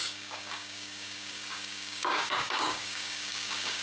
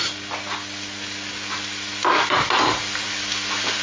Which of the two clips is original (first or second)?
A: second